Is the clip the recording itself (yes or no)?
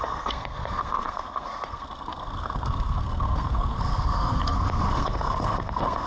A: no